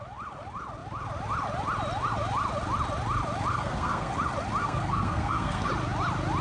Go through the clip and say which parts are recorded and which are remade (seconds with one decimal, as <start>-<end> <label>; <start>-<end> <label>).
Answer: 0.0-3.5 recorded; 3.5-4.1 remade; 4.1-4.6 recorded; 4.6-5.7 remade; 5.7-6.4 recorded